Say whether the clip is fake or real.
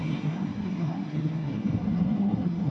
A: fake